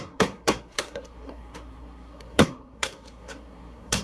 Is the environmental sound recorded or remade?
remade